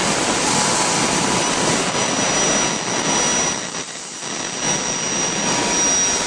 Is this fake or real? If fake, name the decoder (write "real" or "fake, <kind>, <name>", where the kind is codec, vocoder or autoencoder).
real